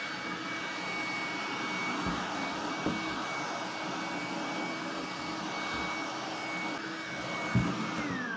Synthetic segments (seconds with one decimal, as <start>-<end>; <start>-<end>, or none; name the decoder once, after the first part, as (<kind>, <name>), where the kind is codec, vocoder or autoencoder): 2.1-2.7 (codec, DAC)